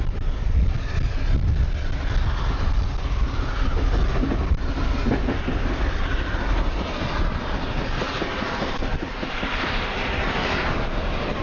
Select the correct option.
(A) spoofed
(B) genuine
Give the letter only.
B